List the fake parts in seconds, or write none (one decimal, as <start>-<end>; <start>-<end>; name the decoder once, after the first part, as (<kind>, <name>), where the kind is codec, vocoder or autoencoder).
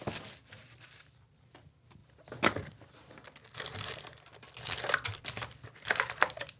none